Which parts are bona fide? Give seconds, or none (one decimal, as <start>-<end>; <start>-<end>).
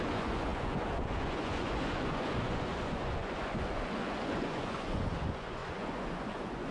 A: none